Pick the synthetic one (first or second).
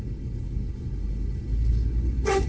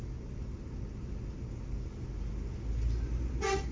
first